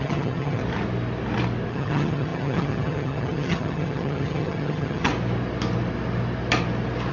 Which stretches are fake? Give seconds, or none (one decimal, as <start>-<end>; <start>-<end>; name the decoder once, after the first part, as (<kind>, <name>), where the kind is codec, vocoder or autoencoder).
0.0-0.6 (vocoder, HiFi-GAN); 1.7-5.1